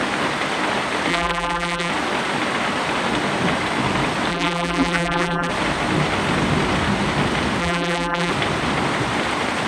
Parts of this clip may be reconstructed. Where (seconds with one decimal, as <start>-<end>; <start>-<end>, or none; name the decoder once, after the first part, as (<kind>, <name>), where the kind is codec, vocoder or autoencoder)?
1.1-1.9 (vocoder, BigVGAN v2); 4.3-5.5; 7.6-8.3